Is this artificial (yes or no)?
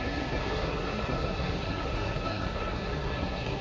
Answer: yes